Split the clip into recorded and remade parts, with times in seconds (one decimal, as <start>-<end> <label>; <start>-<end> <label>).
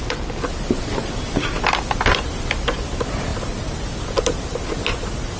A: 0.0-5.4 recorded